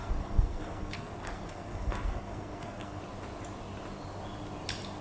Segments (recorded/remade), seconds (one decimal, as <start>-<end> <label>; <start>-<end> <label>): 0.0-3.0 remade; 3.0-5.0 recorded